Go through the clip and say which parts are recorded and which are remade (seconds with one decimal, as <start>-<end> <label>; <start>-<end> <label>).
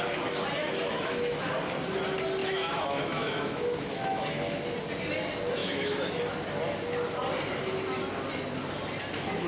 0.0-0.6 recorded; 0.6-1.5 remade; 1.5-2.4 recorded; 2.4-4.6 remade; 4.6-5.6 recorded; 5.6-6.2 remade; 6.2-9.5 recorded